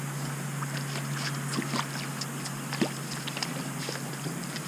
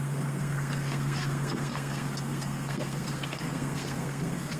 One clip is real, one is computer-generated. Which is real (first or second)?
first